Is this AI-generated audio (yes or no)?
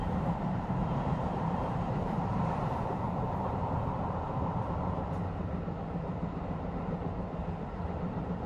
yes